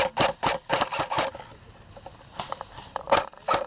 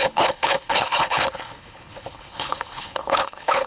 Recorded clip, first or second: first